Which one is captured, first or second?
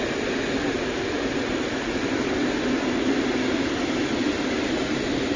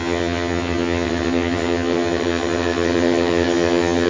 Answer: first